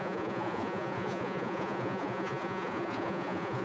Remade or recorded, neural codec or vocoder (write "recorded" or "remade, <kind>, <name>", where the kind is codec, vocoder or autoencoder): remade, vocoder, Vocos